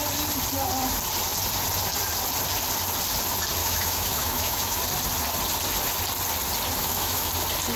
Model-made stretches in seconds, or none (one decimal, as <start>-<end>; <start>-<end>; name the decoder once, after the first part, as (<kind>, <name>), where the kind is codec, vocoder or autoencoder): 3.6-4.8 (autoencoder, DAC-VAE); 6.8-7.3